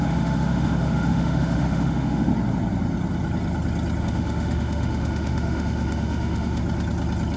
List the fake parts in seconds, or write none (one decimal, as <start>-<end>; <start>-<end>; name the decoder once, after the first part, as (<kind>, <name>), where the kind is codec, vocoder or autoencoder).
0.0-2.3 (autoencoder, DAC-VAE); 4.0-6.6